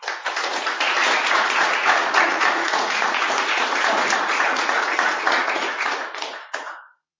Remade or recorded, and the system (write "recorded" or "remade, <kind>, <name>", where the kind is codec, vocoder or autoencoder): remade, vocoder, Vocos